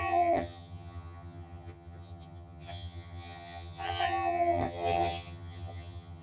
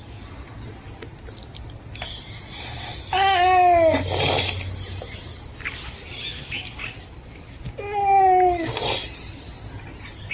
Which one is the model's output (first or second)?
first